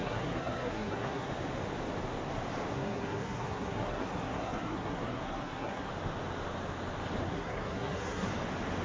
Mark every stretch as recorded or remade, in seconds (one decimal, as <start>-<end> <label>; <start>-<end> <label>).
0.0-1.3 remade; 1.3-2.7 recorded; 2.7-5.9 remade; 5.9-7.2 recorded; 7.2-8.3 remade; 8.3-8.8 recorded